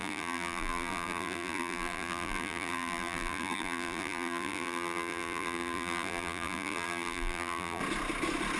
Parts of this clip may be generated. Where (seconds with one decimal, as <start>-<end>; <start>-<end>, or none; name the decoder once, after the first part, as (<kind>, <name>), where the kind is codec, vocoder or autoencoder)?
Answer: 0.0-7.8 (vocoder, BigVGAN v2)